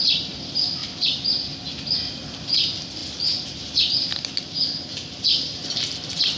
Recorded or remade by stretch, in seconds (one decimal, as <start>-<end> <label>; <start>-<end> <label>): 0.0-6.4 recorded